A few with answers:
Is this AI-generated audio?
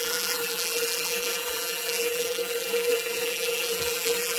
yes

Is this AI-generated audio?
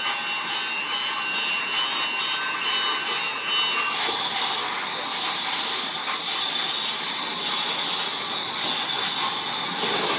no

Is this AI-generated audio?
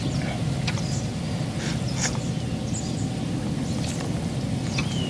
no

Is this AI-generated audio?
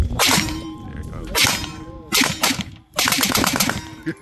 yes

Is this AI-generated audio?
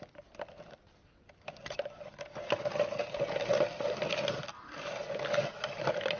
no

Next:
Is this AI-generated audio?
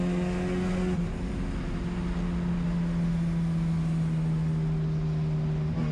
no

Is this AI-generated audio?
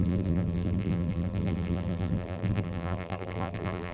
yes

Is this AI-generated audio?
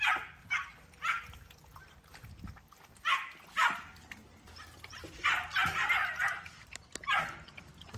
no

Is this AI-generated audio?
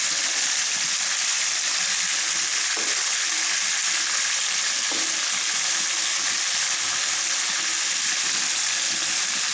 no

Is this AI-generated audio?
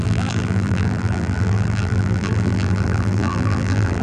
yes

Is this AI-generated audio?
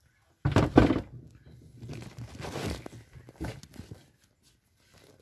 no